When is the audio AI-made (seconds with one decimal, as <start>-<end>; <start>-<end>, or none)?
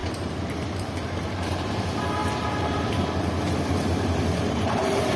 0.0-1.7; 2.2-5.2